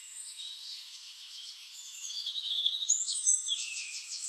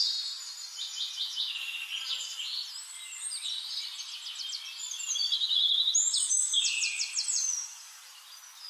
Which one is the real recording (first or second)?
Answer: second